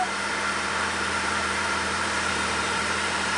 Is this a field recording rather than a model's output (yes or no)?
no